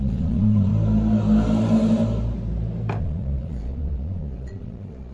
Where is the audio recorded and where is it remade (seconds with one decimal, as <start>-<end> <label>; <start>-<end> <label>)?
0.0-0.7 remade; 0.7-3.0 recorded; 3.0-5.1 remade